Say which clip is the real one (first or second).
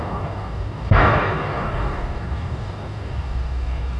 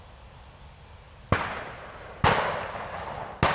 second